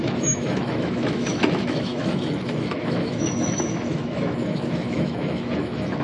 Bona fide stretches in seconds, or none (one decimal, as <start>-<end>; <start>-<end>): none